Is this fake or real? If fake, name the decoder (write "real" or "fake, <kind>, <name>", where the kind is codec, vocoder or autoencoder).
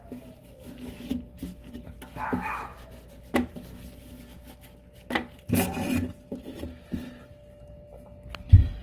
real